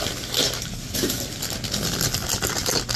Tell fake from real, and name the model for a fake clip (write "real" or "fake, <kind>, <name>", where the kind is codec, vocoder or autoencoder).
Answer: real